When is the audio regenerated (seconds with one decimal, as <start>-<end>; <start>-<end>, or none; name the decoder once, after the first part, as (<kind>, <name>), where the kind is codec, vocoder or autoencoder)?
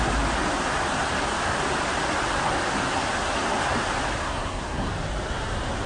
4.2-4.9 (codec, SNAC)